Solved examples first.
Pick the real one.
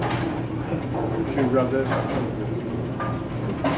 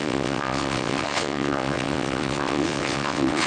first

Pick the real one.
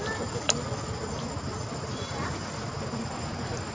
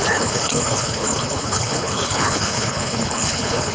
first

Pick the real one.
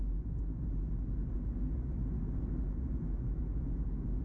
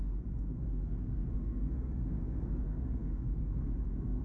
first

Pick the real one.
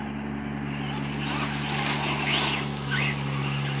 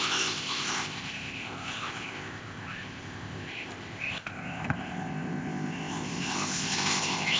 first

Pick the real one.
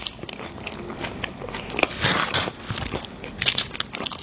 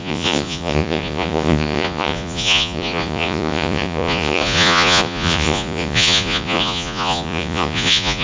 first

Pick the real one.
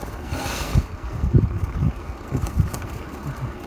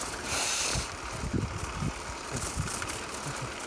second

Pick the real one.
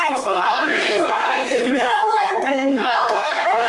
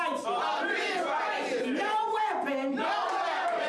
second